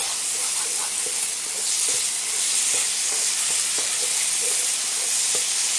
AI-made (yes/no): no